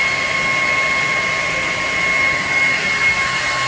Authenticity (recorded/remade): recorded